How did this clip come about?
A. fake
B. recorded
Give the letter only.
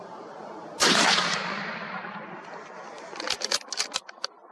B